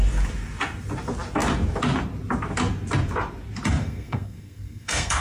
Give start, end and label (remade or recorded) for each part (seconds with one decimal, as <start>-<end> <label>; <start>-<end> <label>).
0.0-3.8 recorded; 3.8-5.2 remade